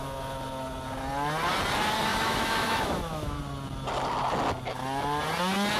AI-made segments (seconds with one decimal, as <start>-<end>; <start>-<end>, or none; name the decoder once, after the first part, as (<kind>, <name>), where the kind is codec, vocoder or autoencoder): 2.1-3.4 (autoencoder, DAC-VAE)